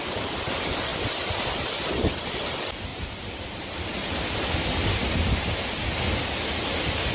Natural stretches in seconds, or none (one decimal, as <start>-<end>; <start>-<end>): 0.0-2.9; 3.6-7.1

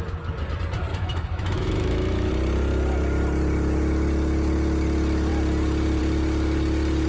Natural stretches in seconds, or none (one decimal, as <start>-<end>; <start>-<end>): 0.0-0.9; 2.3-7.1

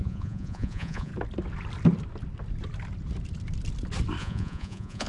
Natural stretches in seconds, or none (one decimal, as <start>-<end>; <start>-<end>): 1.1-4.2

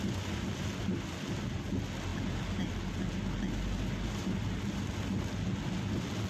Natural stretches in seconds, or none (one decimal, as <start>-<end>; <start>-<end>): 0.0-6.3

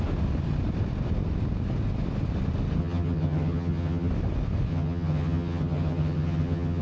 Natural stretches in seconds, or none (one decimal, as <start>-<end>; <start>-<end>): 0.0-2.8; 4.1-4.7

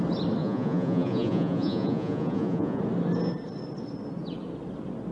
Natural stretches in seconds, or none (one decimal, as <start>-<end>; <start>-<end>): 0.0-0.4; 2.8-5.1

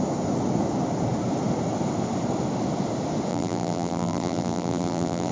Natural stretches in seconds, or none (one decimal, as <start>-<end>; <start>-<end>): 0.0-3.3